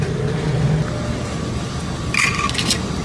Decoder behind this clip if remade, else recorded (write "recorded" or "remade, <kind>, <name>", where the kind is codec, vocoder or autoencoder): recorded